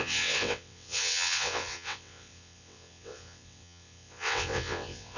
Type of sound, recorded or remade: remade